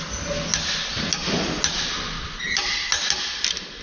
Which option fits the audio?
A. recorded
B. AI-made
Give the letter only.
A